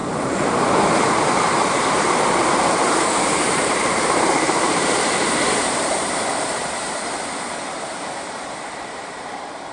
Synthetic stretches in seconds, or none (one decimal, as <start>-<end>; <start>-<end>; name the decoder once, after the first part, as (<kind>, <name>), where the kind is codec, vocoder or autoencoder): 0.0-9.7 (vocoder, BigVGAN v2)